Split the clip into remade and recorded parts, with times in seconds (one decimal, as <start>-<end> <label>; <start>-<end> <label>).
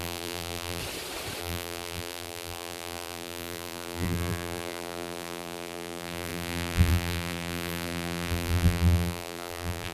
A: 0.0-0.8 remade; 0.8-1.4 recorded; 1.4-9.9 remade